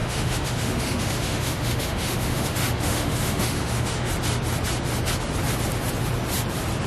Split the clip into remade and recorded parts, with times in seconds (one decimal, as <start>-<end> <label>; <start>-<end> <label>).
0.0-4.1 remade; 4.1-6.9 recorded